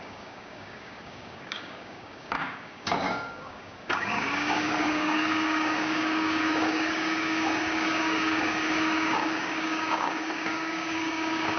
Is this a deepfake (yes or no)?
yes